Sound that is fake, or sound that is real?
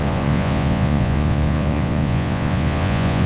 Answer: fake